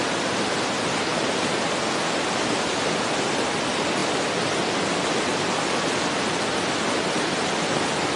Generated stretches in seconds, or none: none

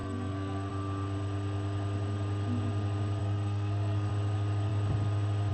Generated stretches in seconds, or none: 0.0-0.7 (codec, SNAC); 3.2-4.1

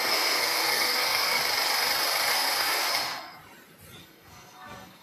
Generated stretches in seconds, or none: 0.0-1.4 (codec, SNAC); 2.3-3.4; 4.0-5.0

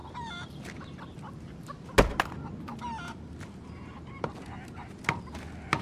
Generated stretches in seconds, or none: none

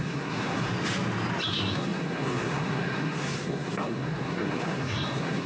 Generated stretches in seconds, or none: 0.0-0.7 (codec, SNAC); 1.5-5.5

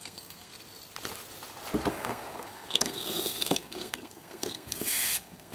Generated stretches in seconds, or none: 0.0-0.5 (codec, SNAC); 1.9-5.5

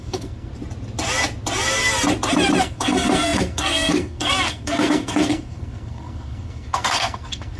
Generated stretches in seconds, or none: 0.0-0.5 (codec, SNAC); 2.6-7.6